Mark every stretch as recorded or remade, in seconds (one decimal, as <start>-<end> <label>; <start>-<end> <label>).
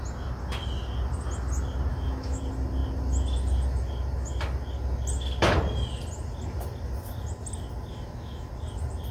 0.0-1.9 recorded; 1.9-2.4 remade; 2.4-7.9 recorded; 7.9-8.5 remade; 8.5-9.1 recorded